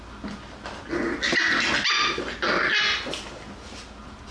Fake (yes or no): no